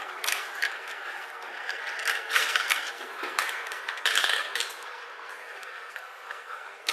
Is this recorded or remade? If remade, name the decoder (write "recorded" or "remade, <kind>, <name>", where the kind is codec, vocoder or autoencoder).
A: remade, codec, SNAC